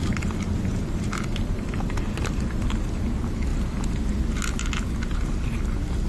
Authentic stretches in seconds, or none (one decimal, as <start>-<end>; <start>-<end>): 0.0-6.1